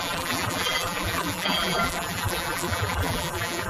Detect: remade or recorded remade